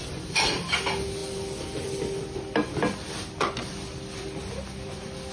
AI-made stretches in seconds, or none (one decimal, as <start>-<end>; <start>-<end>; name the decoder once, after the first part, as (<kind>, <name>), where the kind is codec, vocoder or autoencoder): none